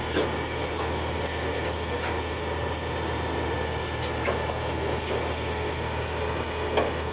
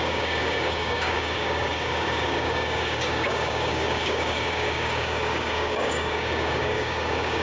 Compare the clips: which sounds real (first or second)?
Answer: first